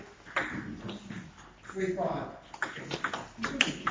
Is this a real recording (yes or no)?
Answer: yes